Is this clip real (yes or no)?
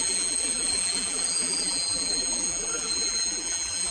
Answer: no